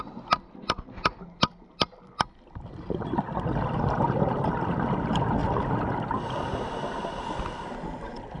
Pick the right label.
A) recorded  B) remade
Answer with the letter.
A